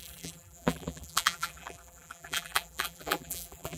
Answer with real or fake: fake